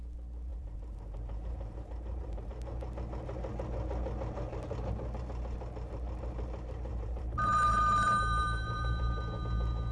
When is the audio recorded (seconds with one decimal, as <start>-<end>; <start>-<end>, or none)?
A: 0.0-0.5; 2.5-6.9; 9.2-9.9